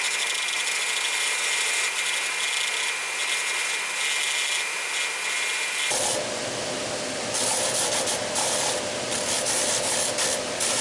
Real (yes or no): yes